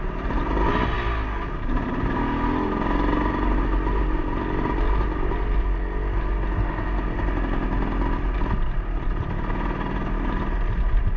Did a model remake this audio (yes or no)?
no